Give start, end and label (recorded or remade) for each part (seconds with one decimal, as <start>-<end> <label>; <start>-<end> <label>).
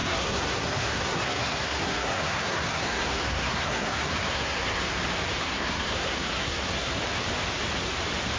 0.0-4.8 remade; 4.8-5.4 recorded; 5.4-7.0 remade; 7.0-8.4 recorded